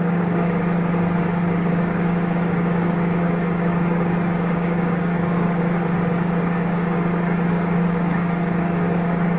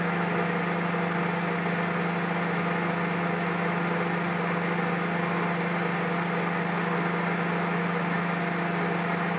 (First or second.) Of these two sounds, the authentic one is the second